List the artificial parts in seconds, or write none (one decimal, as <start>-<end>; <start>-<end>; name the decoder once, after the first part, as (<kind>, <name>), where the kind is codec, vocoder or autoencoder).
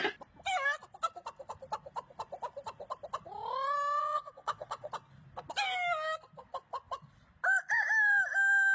4.0-4.9 (vocoder, WaveNeXt)